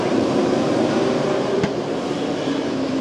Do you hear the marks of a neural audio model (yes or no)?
yes